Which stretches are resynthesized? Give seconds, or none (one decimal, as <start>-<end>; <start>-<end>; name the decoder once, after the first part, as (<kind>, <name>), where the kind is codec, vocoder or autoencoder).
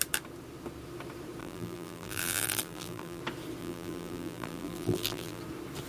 1.4-3.2 (vocoder, BigVGAN v2); 3.6-5.4